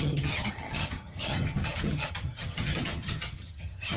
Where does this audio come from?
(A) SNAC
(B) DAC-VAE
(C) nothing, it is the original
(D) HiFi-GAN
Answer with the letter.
D